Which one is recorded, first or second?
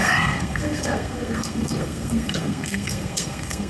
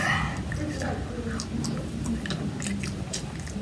second